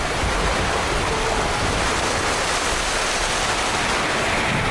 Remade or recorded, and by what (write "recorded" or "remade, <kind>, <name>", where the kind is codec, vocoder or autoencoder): recorded